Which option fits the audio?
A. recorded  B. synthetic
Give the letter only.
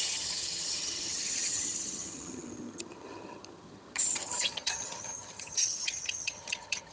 B